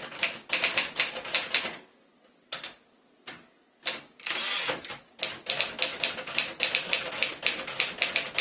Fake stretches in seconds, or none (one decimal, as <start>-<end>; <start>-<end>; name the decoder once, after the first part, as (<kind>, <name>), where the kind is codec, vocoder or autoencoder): none